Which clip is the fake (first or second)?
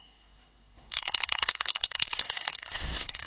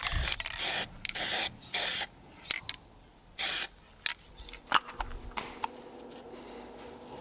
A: first